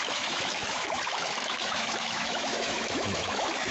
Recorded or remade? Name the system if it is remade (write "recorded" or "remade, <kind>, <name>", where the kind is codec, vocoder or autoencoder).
remade, autoencoder, DAC-VAE